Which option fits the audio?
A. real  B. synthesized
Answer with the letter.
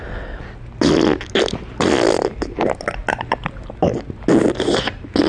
A